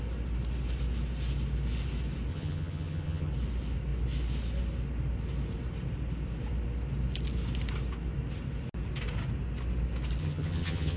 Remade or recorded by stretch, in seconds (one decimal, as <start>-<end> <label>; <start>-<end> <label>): 0.0-2.3 recorded; 2.3-3.3 remade; 3.3-10.2 recorded; 10.2-11.0 remade